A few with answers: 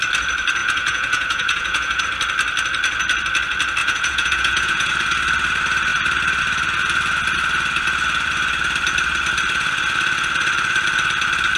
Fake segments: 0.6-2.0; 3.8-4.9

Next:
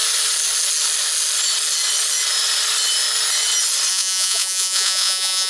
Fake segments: 3.9-5.5

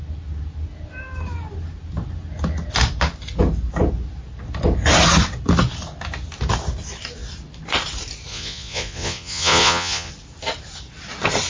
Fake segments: 8.3-10.1

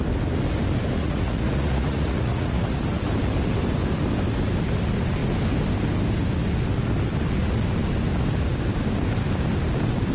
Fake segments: 1.0-2.8

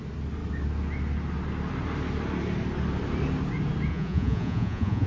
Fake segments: 3.9-5.1